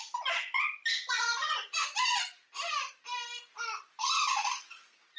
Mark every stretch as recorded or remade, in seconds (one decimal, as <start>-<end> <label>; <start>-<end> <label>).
0.0-5.2 recorded